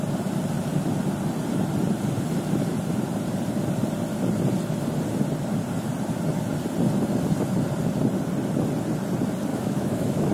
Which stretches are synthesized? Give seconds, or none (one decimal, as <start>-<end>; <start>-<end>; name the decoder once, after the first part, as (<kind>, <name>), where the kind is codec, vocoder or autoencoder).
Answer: 9.5-10.3 (autoencoder, DAC-VAE)